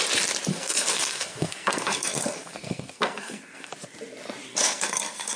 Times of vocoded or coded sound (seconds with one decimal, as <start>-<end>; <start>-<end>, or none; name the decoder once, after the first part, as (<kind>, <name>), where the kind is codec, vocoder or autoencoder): 0.5-3.7 (codec, SNAC); 4.5-5.4